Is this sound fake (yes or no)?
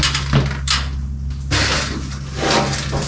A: no